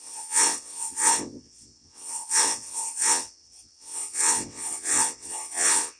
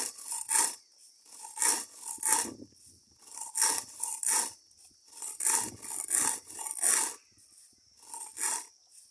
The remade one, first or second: first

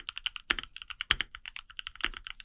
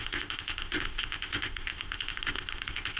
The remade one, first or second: second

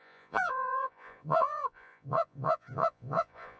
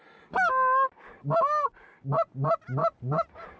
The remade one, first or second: first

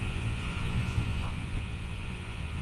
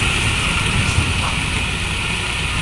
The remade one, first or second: first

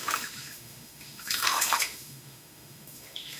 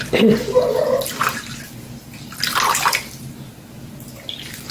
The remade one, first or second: first